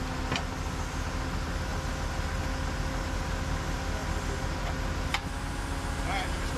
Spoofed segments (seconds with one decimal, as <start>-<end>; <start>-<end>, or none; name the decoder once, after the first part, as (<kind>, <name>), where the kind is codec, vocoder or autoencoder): none